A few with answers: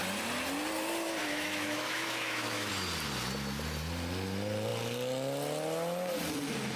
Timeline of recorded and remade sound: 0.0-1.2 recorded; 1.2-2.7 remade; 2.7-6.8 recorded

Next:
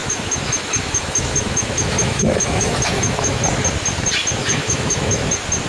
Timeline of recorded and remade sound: 0.0-3.4 remade; 3.4-4.4 recorded; 4.4-5.3 remade; 5.3-5.7 recorded

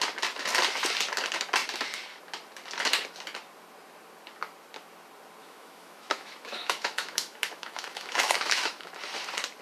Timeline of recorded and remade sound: 0.0-5.4 recorded; 5.4-8.9 remade; 8.9-9.6 recorded

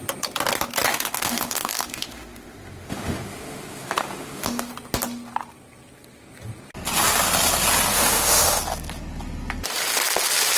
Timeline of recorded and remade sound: 0.0-0.9 recorded; 0.9-4.7 remade; 4.7-7.9 recorded; 7.9-8.6 remade; 8.6-10.6 recorded

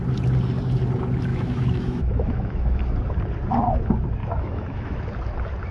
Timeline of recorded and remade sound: 0.0-1.3 recorded; 1.3-2.8 remade; 2.8-4.2 recorded; 4.2-5.0 remade; 5.0-5.7 recorded

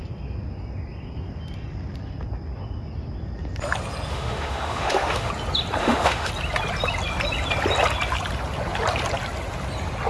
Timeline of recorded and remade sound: 0.0-4.1 recorded; 4.1-5.3 remade; 5.3-5.8 recorded; 5.8-6.3 remade; 6.3-10.1 recorded

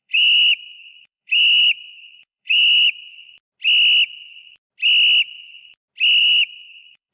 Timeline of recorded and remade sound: 0.0-3.1 remade; 3.1-6.2 recorded; 6.2-7.1 remade